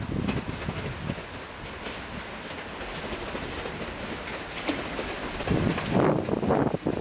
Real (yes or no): yes